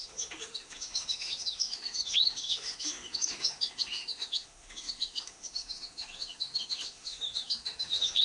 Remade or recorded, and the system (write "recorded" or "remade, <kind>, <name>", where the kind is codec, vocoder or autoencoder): remade, autoencoder, DAC-VAE